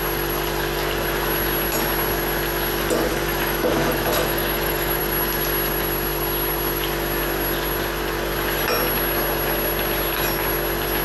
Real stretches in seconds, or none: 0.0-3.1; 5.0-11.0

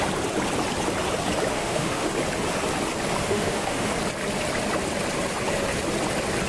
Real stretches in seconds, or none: 0.0-1.5; 2.1-3.2; 3.9-6.5

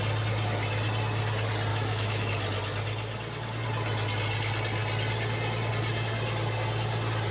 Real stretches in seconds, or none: 0.0-1.7; 2.3-7.3

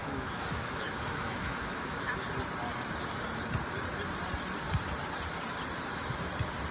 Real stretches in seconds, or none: 2.1-6.7

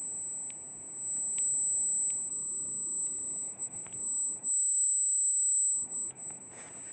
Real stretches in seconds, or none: 0.0-2.3; 6.4-6.9